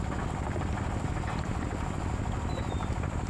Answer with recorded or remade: recorded